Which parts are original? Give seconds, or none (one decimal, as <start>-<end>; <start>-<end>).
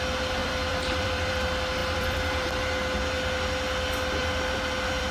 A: 0.0-0.4; 1.3-1.8; 2.5-4.2